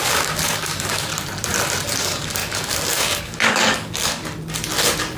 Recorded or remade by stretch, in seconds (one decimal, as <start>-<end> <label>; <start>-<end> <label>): 0.0-1.1 remade; 1.1-1.9 recorded; 1.9-4.2 remade; 4.2-5.2 recorded